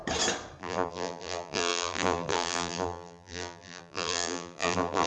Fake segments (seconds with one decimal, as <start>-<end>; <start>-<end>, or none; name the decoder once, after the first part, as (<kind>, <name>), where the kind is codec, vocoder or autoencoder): 0.6-5.1 (vocoder, BigVGAN v2)